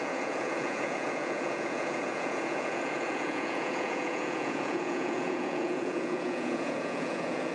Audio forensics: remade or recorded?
remade